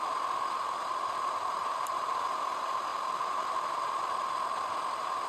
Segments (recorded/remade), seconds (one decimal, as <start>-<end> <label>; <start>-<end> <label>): 0.0-1.6 recorded; 1.6-2.1 remade; 2.1-2.9 recorded; 2.9-3.6 remade; 3.6-5.3 recorded